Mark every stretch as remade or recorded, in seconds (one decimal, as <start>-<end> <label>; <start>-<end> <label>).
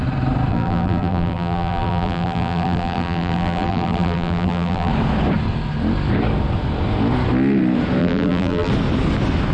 0.0-0.5 recorded; 0.5-4.9 remade; 4.9-8.0 recorded; 8.0-8.7 remade; 8.7-9.5 recorded